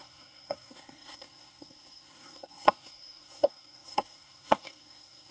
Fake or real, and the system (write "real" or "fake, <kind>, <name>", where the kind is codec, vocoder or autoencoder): fake, codec, SNAC